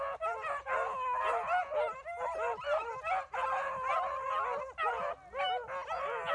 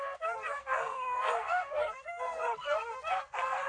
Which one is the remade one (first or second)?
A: second